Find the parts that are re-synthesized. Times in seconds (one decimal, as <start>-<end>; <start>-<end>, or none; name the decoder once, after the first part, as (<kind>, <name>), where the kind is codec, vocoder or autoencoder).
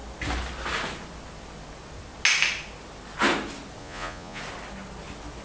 3.8-4.4 (vocoder, Vocos)